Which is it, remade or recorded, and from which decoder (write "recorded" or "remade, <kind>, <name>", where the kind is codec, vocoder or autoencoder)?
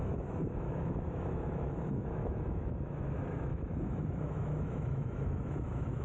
remade, autoencoder, DAC-VAE